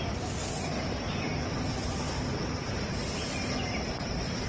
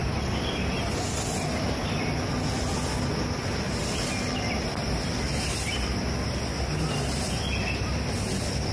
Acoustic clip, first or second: second